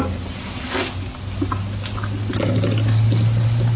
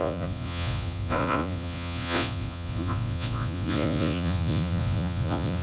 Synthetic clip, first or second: second